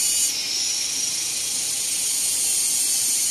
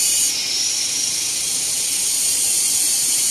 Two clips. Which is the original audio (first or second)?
first